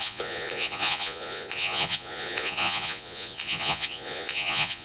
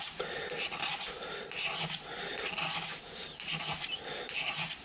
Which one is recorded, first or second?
second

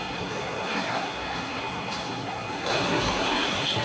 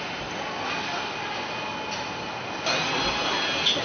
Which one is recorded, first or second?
second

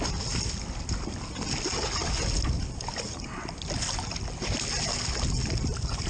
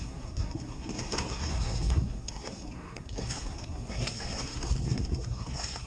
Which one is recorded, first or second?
first